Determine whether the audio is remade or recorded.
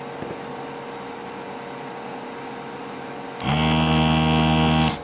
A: recorded